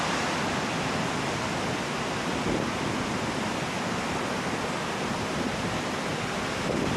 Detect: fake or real real